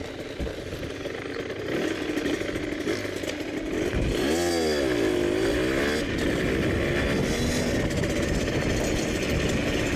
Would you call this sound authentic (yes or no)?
yes